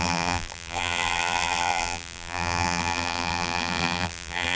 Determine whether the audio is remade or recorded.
remade